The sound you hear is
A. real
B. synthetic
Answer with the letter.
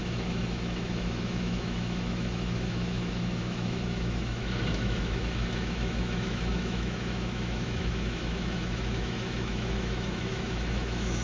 B